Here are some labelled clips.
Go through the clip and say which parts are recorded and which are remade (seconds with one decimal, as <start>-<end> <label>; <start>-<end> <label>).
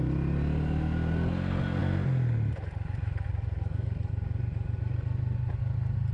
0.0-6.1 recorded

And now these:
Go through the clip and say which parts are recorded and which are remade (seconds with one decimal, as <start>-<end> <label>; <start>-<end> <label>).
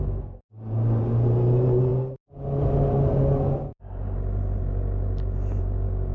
0.0-6.1 recorded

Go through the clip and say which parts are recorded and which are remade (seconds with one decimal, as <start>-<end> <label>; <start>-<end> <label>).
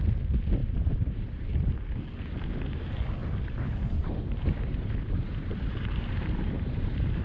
0.0-0.6 recorded; 0.6-1.7 remade; 1.7-3.2 recorded; 3.2-7.2 remade